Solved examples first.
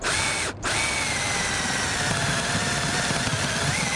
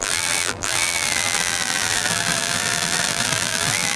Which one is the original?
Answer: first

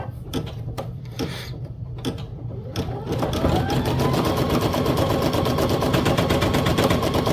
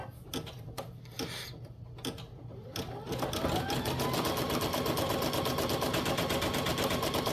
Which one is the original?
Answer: second